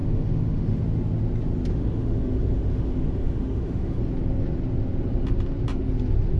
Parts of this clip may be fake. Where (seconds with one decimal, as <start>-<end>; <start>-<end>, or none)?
0.0-0.8; 1.7-4.0